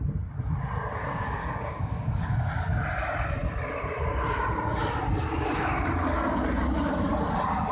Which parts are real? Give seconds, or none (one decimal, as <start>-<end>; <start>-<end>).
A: 0.0-1.0; 2.5-7.7